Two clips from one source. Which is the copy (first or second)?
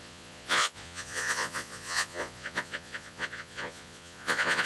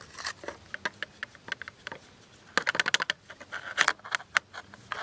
first